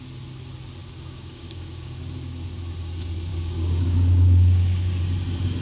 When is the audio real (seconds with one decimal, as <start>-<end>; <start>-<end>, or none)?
0.0-0.8; 2.0-3.3; 5.0-5.6